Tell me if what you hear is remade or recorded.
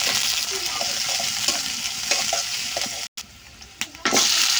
recorded